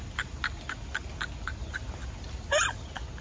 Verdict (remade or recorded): recorded